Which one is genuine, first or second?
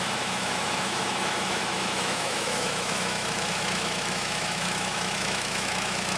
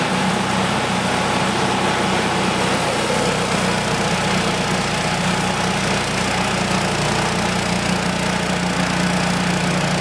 second